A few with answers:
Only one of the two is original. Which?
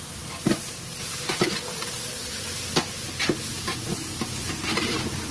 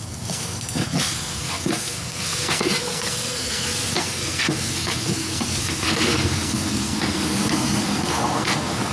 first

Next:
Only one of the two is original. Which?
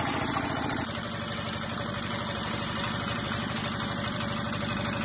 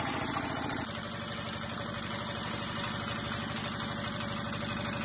second